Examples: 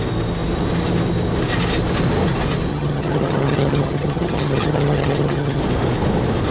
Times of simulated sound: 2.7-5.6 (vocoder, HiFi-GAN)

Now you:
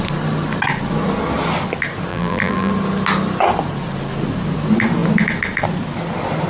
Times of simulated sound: 2.1-2.7 (vocoder, BigVGAN v2)

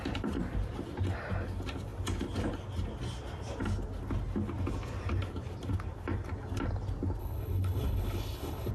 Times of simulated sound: 7.2-8.7 (codec, HILCodec)

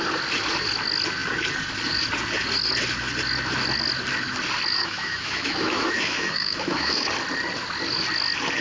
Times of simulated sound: 4.8-7.1 (autoencoder, DAC-VAE)

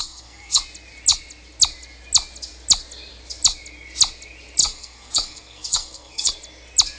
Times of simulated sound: 0.0-0.6 (codec, SNAC); 4.6-6.3

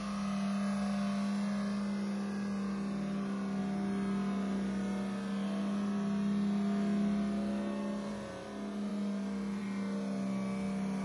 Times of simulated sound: none

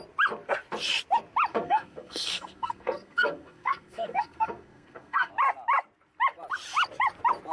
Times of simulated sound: 1.5-5.3 (codec, SNAC)